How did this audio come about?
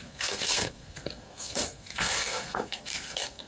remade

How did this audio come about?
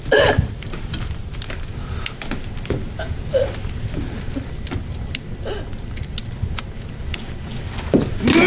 recorded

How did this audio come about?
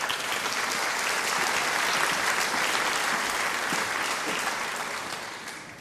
recorded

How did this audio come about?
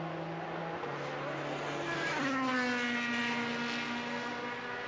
recorded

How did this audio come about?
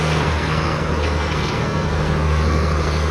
remade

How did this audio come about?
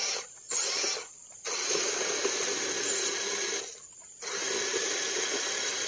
recorded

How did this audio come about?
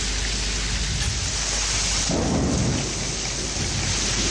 recorded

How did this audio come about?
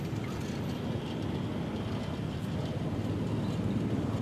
recorded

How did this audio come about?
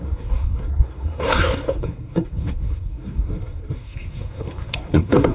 remade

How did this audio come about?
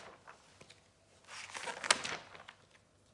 recorded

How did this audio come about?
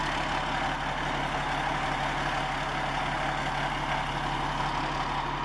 recorded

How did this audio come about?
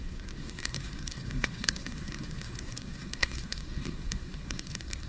remade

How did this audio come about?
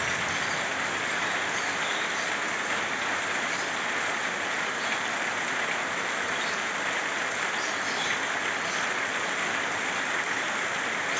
recorded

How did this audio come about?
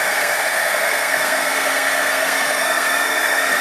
remade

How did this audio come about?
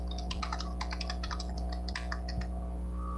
recorded